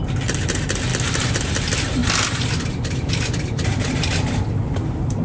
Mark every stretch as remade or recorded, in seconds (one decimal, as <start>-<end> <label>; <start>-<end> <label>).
0.0-0.9 recorded; 0.9-1.6 remade; 1.6-5.2 recorded